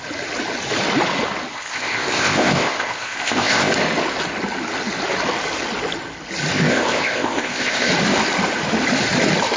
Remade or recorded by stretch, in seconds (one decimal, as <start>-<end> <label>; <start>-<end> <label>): 0.0-1.5 recorded; 1.5-3.7 remade; 3.7-6.5 recorded; 6.5-7.9 remade; 7.9-9.6 recorded